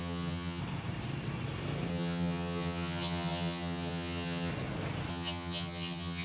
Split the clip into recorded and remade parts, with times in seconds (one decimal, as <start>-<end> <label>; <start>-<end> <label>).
0.0-0.6 remade; 0.6-1.9 recorded; 1.9-4.5 remade; 4.5-5.1 recorded; 5.1-6.2 remade